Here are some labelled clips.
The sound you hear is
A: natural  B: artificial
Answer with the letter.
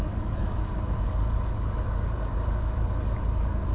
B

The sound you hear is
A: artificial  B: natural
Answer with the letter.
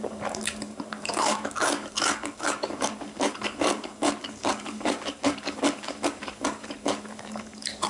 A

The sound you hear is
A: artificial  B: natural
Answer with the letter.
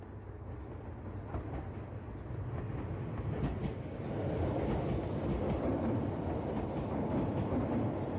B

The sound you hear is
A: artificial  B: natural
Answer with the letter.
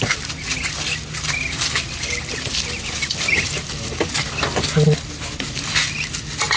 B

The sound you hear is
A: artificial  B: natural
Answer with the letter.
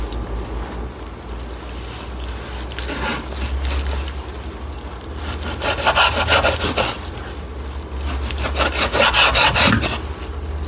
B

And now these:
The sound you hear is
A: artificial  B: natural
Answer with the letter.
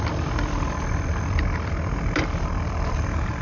B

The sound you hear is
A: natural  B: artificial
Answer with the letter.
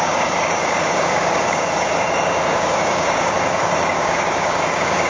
B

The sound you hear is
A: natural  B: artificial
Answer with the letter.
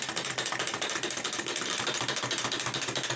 A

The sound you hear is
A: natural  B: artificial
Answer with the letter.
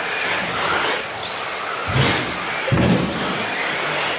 A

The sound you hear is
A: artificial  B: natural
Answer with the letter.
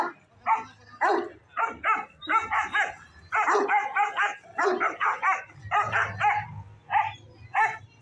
B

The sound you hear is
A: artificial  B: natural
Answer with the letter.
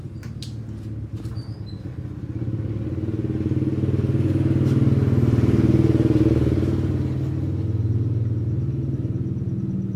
B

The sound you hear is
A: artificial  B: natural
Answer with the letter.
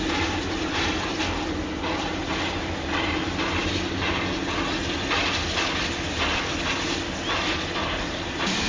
B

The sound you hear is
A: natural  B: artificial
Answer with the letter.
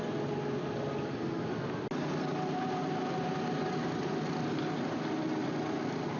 A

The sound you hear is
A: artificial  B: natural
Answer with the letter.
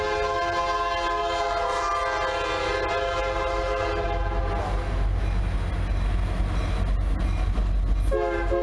B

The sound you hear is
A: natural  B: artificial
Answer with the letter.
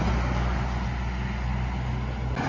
A